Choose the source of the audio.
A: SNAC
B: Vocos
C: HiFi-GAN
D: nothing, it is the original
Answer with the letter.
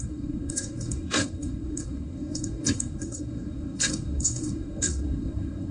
A